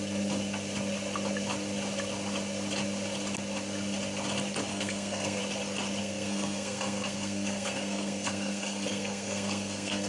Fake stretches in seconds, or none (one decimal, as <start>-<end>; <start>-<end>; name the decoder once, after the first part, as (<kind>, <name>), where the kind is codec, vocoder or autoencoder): 4.7-5.4 (codec, SNAC); 6.0-10.1